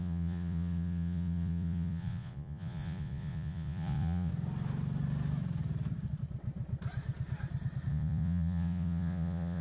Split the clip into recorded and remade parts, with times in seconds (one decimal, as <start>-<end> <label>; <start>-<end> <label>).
0.0-4.3 remade; 4.3-7.9 recorded; 7.9-9.6 remade